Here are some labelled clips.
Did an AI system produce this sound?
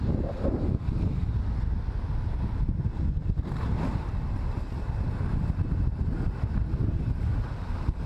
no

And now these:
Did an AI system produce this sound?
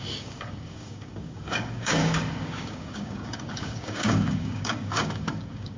yes